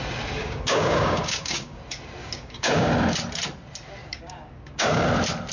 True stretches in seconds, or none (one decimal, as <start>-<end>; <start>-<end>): 0.0-0.4; 1.8-2.2; 2.9-4.0; 5.0-5.5